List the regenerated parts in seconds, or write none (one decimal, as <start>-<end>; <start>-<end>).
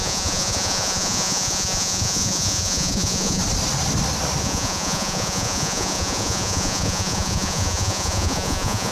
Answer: 0.0-3.4; 4.4-8.9